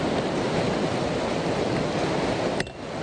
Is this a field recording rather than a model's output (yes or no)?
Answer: yes